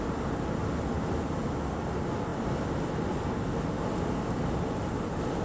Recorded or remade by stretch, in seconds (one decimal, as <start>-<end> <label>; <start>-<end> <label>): 0.0-5.4 recorded